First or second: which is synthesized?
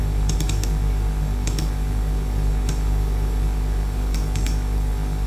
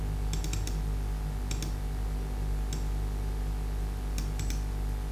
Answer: first